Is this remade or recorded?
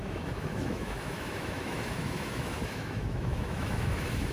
remade